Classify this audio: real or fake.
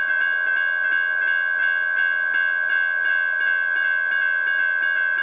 real